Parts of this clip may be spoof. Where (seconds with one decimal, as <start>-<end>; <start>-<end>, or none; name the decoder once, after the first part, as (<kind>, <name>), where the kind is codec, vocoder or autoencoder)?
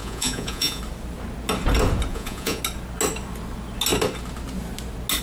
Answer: 0.0-0.8 (vocoder, Vocos); 2.1-2.6